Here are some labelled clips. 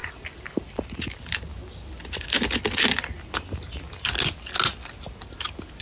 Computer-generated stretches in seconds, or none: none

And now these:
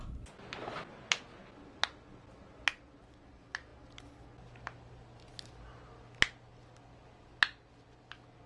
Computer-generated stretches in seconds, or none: none

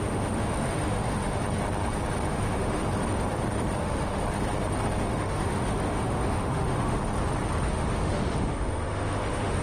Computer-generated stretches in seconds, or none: 0.0-1.4 (autoencoder, DAC-VAE); 2.3-2.8; 3.8-4.2; 5.0-7.0; 7.7-9.6

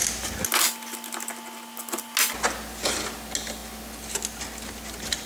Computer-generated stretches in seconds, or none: none

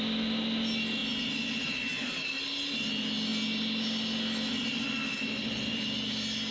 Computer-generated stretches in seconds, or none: none

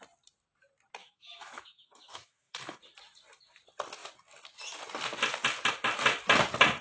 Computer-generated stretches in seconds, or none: 1.0-2.8 (autoencoder, DAC-VAE)

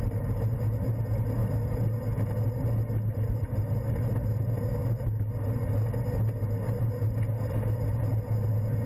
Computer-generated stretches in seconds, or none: none